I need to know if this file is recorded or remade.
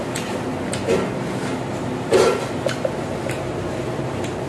recorded